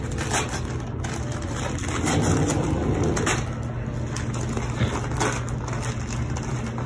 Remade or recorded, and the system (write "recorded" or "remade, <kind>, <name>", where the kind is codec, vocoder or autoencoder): recorded